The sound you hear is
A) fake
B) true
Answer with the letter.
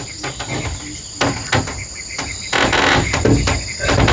B